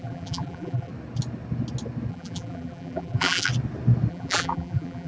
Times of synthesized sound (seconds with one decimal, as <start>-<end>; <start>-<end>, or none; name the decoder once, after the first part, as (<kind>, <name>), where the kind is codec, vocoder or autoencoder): 0.0-0.9 (vocoder, BigVGAN v2); 2.1-3.5; 4.1-5.1